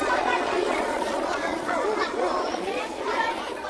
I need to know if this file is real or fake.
fake